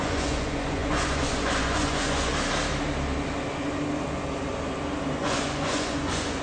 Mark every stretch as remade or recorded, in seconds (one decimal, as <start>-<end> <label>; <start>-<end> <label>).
0.0-2.3 remade; 2.3-5.2 recorded; 5.2-6.4 remade